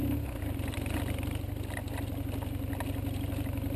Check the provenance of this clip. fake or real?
real